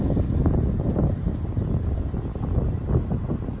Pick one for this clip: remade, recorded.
recorded